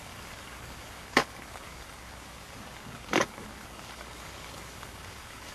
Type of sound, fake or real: fake